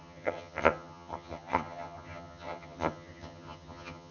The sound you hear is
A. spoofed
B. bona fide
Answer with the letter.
A